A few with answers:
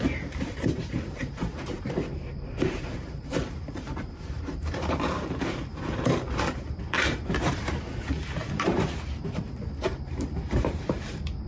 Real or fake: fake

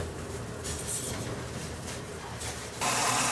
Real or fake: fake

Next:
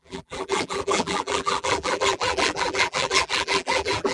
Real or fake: fake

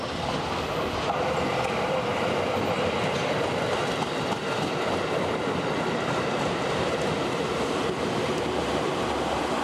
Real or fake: fake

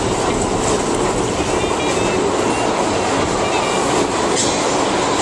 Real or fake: real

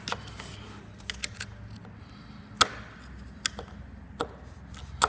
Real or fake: real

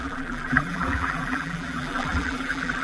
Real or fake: fake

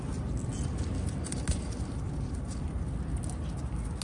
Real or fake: real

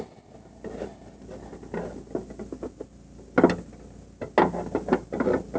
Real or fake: real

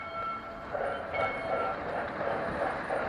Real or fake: fake